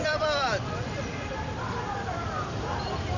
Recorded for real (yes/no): no